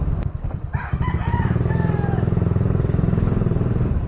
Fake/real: real